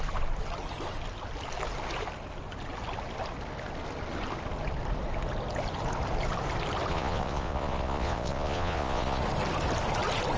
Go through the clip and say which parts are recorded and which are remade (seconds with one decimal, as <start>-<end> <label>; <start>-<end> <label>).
0.0-6.9 recorded; 6.9-9.2 remade; 9.2-10.4 recorded